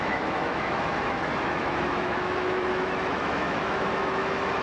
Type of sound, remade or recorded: remade